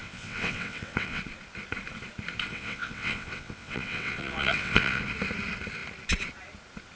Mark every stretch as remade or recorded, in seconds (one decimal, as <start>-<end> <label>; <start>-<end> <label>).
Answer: 0.0-1.2 remade; 1.2-2.5 recorded; 2.5-5.0 remade; 5.0-7.0 recorded